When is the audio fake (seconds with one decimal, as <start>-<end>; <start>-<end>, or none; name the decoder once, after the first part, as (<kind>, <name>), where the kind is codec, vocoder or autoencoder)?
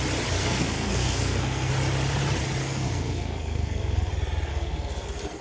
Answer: 0.4-1.7 (codec, SNAC); 2.6-4.1; 4.5-5.4